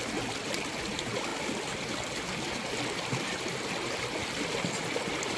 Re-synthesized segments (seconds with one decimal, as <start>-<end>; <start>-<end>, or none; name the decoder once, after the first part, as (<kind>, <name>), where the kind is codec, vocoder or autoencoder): none